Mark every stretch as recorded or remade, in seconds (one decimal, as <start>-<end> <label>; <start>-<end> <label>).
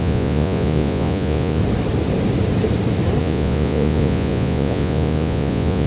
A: 0.0-1.6 remade; 1.6-3.2 recorded; 3.2-5.9 remade